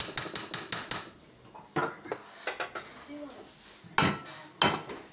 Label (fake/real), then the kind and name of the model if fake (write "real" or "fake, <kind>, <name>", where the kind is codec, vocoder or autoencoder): real